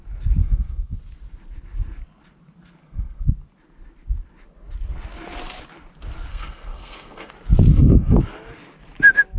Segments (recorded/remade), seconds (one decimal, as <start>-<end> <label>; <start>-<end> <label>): 0.0-0.4 recorded; 0.4-1.0 remade; 1.0-2.8 recorded; 2.8-3.3 remade; 3.3-6.3 recorded; 6.3-7.3 remade; 7.3-7.7 recorded; 7.7-8.2 remade; 8.2-9.4 recorded